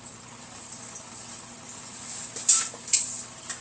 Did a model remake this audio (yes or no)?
no